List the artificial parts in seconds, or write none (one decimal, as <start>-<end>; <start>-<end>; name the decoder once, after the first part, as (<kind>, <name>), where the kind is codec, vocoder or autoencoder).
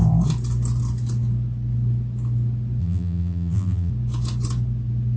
2.8-3.9 (vocoder, BigVGAN v2)